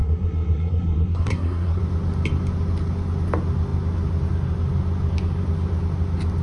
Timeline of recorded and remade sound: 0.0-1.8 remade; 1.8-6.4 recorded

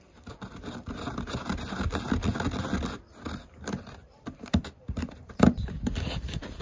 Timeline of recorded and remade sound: 0.0-2.2 remade; 2.2-3.8 recorded; 3.8-6.6 remade

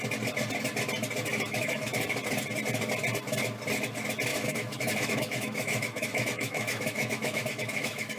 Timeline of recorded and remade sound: 0.0-1.3 recorded; 1.3-1.9 remade; 1.9-4.3 recorded; 4.3-8.2 remade